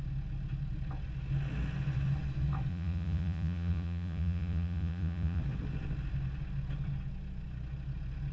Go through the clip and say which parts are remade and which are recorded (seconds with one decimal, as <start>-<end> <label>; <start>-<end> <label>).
0.0-2.7 recorded; 2.7-5.4 remade; 5.4-8.3 recorded